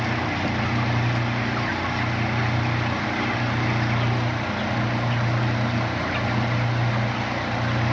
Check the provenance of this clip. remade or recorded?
recorded